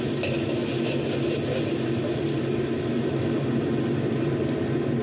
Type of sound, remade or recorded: recorded